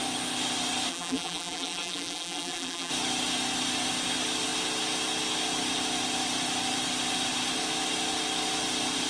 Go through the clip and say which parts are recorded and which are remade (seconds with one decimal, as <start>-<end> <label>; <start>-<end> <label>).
0.0-0.9 recorded; 0.9-2.9 remade; 2.9-9.1 recorded